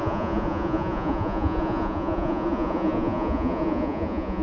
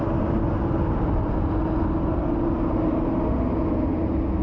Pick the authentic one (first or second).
second